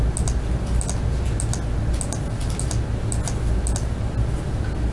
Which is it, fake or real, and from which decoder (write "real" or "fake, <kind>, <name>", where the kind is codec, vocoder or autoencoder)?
real